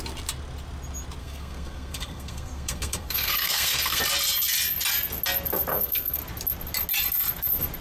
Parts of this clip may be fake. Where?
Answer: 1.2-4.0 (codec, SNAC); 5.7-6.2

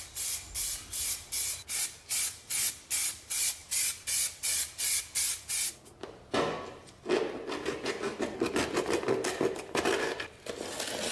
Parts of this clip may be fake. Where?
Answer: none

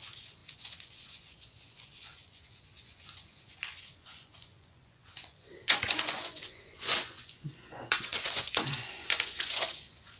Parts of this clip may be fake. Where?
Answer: 0.0-10.2 (vocoder, Vocos)